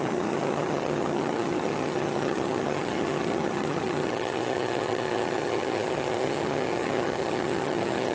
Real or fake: fake